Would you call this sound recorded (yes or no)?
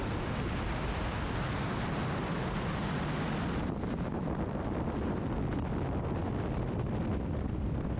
yes